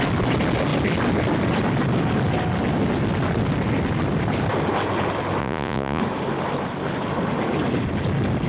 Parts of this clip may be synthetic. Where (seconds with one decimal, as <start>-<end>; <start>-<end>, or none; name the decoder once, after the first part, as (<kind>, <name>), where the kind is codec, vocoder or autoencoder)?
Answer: 5.4-6.0 (vocoder, Vocos)